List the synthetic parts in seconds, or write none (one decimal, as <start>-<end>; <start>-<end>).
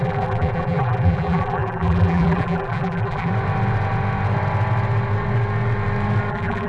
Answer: 0.0-3.3; 6.3-6.7